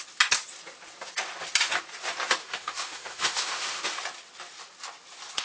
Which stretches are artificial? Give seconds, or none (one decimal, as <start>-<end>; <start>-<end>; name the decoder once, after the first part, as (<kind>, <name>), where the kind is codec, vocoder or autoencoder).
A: 2.4-4.0 (autoencoder, DAC-VAE)